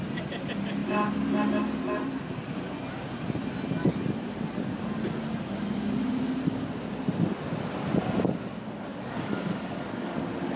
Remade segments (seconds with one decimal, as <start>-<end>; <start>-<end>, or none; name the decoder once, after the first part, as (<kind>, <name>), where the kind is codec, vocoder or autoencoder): 8.9-10.6 (codec, DAC)